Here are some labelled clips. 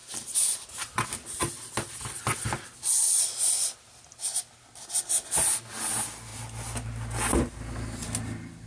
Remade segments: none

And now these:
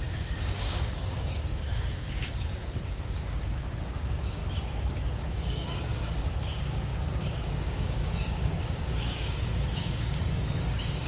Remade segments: 0.0-4.4 (codec, DAC); 4.9-11.1

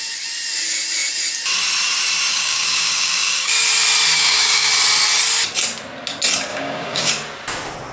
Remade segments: 2.3-3.5 (codec, DAC); 4.1-4.7; 6.5-7.1

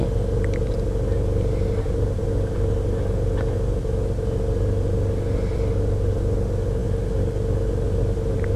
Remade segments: none

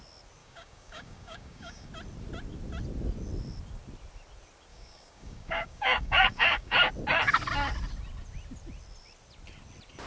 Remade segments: 0.4-1.9 (codec, DAC); 4.7-6.9

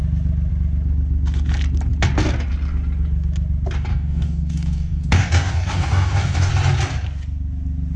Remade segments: 3.9-6.5 (codec, DAC)